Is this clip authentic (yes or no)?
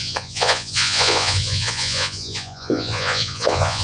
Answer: no